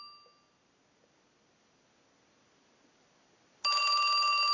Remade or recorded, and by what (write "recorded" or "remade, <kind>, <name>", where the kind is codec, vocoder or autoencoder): recorded